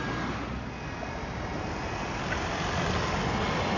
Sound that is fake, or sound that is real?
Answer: real